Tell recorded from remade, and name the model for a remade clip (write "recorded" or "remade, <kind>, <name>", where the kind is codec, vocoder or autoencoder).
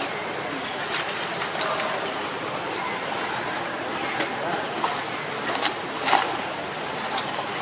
remade, vocoder, BigVGAN v2